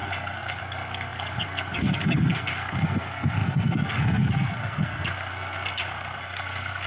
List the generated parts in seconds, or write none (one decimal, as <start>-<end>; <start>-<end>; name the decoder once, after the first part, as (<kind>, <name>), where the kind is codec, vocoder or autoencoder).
0.0-6.9 (codec, SNAC)